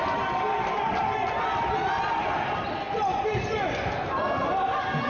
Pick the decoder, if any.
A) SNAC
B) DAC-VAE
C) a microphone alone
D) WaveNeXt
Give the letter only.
C